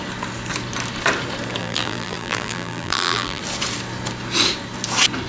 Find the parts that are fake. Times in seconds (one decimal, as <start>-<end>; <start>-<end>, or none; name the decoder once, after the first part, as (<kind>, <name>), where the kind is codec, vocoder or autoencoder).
1.6-3.4 (vocoder, BigVGAN v2)